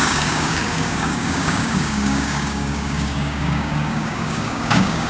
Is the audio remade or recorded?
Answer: remade